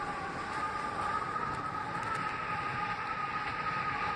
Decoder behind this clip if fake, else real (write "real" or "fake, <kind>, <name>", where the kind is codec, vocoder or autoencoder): real